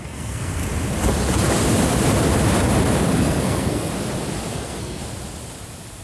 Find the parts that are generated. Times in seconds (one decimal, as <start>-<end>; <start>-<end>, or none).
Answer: 0.0-0.6; 3.2-3.9; 4.5-5.0